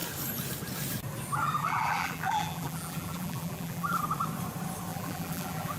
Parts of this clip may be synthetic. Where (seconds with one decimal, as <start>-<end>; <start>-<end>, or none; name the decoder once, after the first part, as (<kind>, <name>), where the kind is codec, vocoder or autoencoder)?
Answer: 1.6-4.0 (vocoder, BigVGAN v2); 4.9-5.8